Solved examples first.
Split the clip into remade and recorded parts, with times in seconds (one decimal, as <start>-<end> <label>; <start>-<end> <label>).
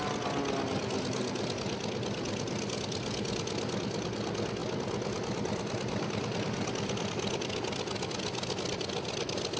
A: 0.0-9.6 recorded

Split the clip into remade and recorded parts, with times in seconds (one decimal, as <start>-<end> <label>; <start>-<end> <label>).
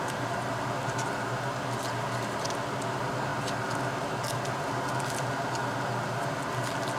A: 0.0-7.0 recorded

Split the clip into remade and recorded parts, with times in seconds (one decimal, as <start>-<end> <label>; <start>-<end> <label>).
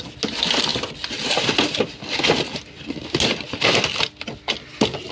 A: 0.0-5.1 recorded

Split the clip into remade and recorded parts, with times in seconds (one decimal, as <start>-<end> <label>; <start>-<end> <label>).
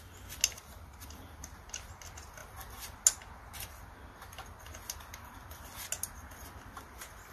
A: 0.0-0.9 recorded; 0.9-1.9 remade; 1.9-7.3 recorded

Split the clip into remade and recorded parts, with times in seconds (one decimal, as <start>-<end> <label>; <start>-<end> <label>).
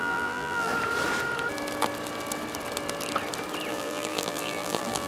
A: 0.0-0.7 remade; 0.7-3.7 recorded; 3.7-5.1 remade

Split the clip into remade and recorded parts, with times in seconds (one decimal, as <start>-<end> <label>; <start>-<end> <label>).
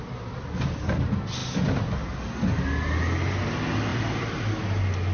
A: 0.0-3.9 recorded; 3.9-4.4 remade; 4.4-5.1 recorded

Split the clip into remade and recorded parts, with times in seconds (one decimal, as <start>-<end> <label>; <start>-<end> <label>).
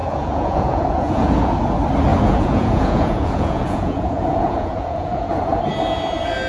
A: 0.0-1.6 remade; 1.6-2.1 recorded; 2.1-5.6 remade; 5.6-6.5 recorded